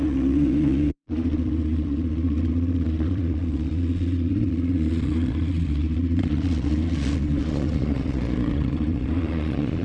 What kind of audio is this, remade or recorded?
remade